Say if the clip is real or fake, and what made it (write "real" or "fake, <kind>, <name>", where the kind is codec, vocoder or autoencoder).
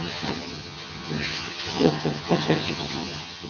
fake, vocoder, HiFi-GAN